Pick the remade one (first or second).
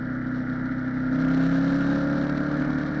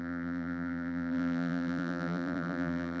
second